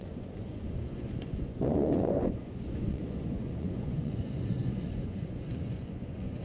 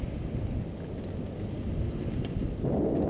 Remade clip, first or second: first